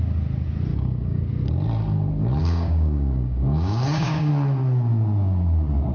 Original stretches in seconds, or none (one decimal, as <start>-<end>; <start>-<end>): 0.0-0.7; 1.2-2.4; 4.3-5.9